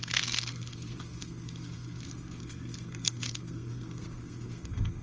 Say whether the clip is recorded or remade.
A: remade